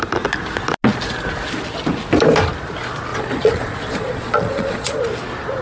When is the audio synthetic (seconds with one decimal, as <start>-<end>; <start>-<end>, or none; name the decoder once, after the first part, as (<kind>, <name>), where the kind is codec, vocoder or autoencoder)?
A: 3.1-5.0 (vocoder, Vocos)